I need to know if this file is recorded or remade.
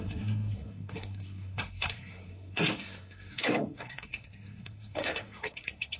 remade